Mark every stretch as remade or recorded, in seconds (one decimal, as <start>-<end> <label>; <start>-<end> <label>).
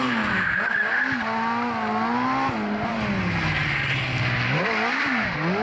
0.0-0.6 remade; 0.6-5.6 recorded